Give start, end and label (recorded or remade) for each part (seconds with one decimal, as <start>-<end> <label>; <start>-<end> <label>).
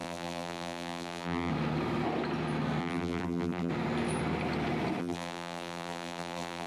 0.0-1.5 remade; 1.5-2.8 recorded; 2.8-3.7 remade; 3.7-5.0 recorded; 5.0-6.7 remade